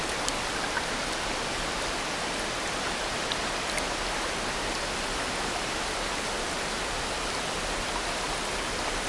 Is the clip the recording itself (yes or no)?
yes